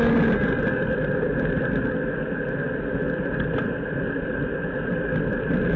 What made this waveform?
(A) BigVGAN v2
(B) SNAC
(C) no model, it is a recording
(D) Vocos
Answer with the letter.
C